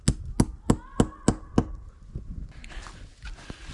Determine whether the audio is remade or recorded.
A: recorded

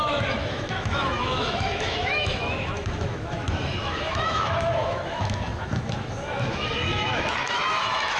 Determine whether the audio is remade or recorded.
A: remade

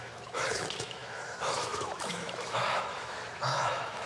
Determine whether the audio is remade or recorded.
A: remade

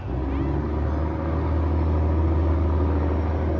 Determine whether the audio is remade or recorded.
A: recorded